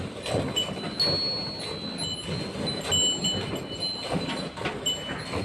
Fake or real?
real